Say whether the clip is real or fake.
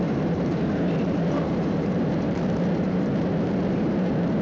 fake